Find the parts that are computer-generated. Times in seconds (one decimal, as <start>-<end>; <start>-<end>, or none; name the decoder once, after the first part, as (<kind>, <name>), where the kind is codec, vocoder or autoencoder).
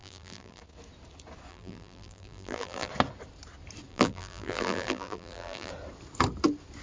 0.0-0.6 (vocoder, BigVGAN v2); 1.5-2.9; 3.9-5.7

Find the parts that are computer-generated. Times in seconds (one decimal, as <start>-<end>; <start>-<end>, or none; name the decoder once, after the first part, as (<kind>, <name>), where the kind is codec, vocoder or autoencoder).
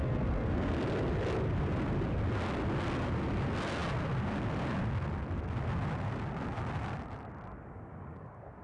0.0-0.7 (codec, SNAC)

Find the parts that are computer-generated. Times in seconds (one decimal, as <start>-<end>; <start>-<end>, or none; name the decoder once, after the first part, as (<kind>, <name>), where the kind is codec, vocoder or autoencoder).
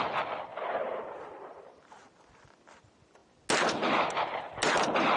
0.5-2.3 (vocoder, BigVGAN v2)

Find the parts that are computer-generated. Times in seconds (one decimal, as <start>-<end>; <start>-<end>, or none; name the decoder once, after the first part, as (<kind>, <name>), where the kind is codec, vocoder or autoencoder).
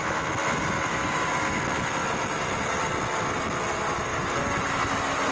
0.9-1.6 (codec, DAC)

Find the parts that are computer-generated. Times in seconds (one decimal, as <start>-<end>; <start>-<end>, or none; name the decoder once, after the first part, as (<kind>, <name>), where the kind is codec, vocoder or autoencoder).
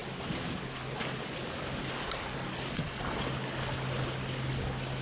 none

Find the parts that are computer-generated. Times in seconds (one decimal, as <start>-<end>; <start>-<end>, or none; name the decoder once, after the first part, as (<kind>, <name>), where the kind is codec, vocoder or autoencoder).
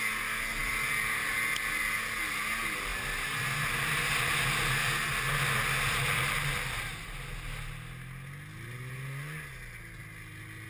none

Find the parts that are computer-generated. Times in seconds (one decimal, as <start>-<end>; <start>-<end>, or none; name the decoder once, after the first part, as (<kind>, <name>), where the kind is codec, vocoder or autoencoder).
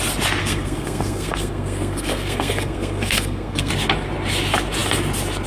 0.4-3.7 (codec, SNAC)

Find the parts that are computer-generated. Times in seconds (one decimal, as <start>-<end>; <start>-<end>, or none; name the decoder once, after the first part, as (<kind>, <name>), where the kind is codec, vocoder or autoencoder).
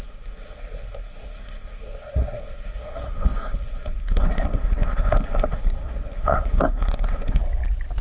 0.0-7.4 (codec, SNAC)